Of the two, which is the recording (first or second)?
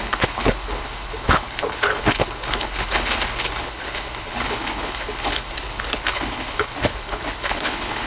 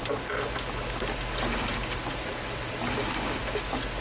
second